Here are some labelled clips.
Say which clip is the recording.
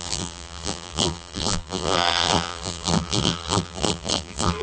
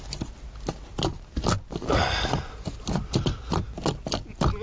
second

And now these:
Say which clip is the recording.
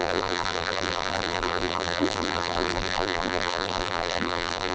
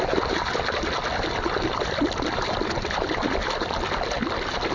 second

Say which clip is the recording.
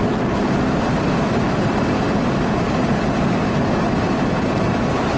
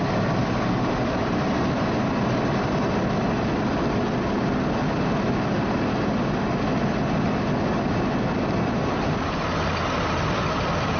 second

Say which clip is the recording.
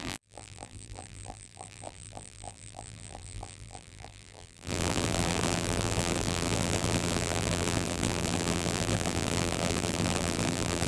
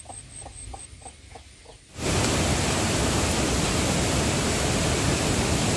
second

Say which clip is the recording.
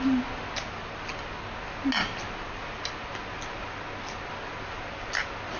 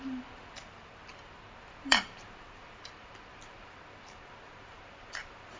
first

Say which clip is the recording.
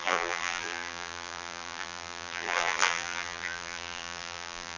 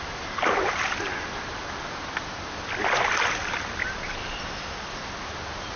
second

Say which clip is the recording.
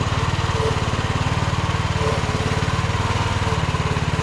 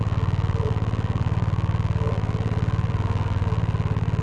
first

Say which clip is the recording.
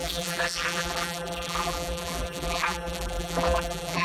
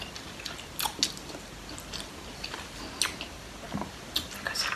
second